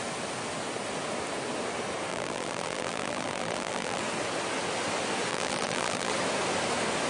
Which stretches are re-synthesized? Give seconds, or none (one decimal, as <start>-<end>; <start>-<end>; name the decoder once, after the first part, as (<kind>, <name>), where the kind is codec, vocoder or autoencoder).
2.1-4.0 (vocoder, BigVGAN v2); 5.3-6.1